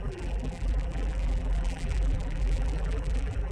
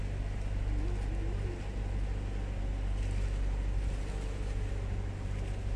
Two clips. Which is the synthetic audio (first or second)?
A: first